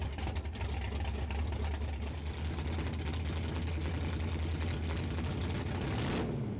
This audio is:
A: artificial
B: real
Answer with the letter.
B